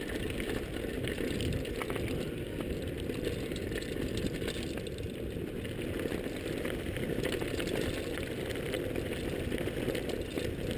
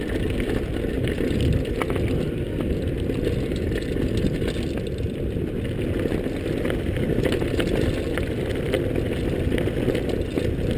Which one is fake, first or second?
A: first